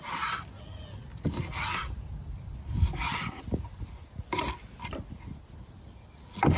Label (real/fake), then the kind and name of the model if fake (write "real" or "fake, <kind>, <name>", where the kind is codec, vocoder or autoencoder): real